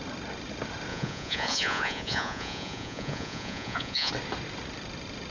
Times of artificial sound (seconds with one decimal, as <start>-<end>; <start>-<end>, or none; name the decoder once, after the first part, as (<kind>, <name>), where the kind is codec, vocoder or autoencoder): 0.9-4.1 (vocoder, Vocos)